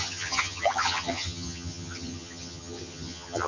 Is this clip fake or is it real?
fake